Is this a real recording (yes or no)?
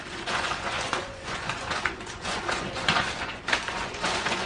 no